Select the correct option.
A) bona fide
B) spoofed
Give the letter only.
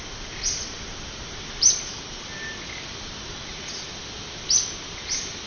B